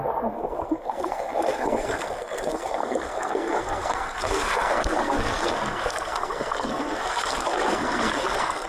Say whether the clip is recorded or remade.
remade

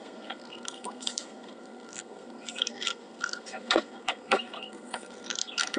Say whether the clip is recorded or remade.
remade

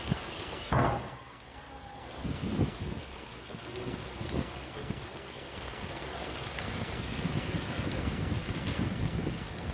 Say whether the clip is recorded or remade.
remade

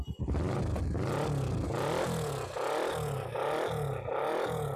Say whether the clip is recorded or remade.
recorded